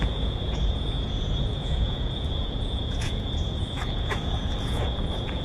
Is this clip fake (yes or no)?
yes